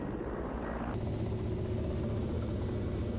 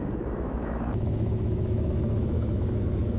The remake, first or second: second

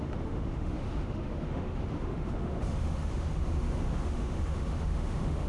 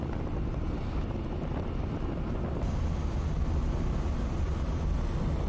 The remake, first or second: first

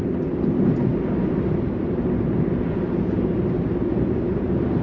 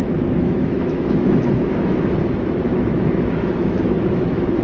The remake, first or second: second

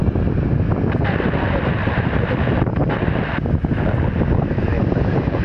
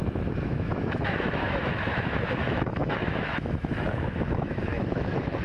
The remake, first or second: second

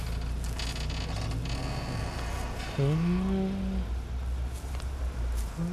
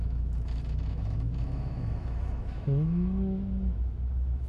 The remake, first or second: second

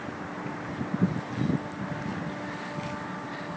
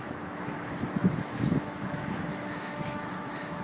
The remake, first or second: second